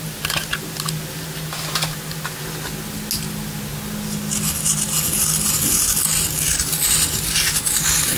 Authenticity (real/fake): real